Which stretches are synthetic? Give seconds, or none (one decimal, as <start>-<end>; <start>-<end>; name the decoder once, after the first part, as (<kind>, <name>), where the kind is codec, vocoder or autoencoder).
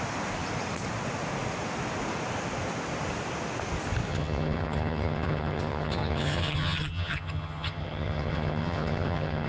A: 4.1-9.5 (vocoder, HiFi-GAN)